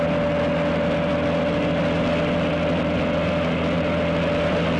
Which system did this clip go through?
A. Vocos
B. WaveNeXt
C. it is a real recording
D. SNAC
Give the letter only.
C